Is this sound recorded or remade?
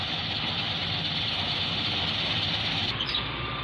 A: remade